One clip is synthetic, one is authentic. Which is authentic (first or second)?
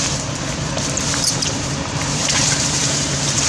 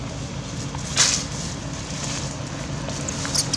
second